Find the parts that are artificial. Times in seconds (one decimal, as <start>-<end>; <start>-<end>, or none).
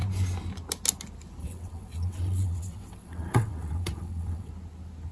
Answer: 1.4-4.5